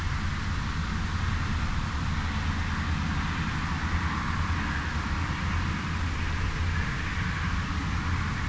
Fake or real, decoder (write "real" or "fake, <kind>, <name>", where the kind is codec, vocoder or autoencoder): real